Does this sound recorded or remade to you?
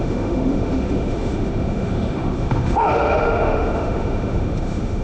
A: remade